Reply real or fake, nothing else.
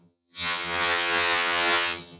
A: fake